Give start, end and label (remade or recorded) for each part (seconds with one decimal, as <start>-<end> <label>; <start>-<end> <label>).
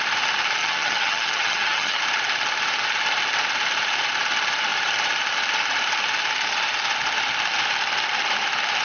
0.0-0.6 recorded; 0.6-2.0 remade; 2.0-8.8 recorded